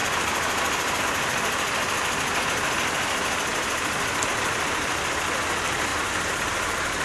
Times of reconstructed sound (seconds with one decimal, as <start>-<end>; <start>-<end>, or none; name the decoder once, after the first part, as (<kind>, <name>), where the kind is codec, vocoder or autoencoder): 0.0-1.0 (vocoder, BigVGAN v2); 3.5-4.6; 5.9-6.4